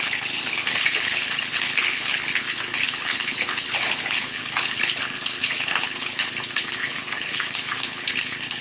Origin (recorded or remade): remade